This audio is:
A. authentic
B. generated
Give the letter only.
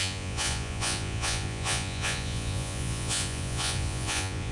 B